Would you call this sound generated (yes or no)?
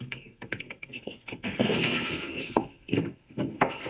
yes